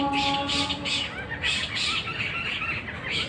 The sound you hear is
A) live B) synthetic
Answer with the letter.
A